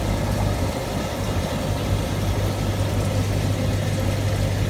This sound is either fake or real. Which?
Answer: real